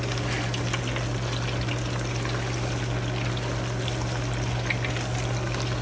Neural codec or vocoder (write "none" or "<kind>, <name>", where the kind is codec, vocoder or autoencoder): none